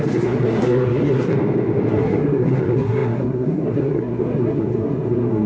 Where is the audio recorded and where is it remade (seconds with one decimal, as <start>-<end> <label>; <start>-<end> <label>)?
0.0-1.3 remade; 1.3-1.9 recorded; 1.9-5.5 remade